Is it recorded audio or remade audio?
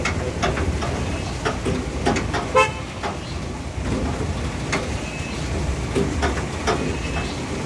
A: recorded